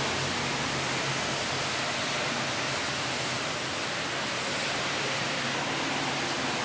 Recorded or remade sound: recorded